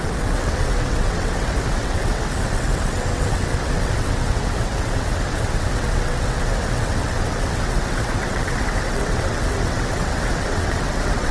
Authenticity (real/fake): fake